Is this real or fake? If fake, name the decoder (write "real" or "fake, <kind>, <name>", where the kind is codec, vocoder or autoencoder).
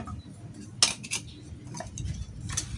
real